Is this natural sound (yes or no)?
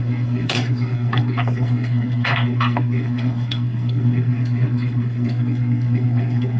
no